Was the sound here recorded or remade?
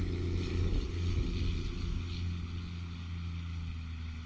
recorded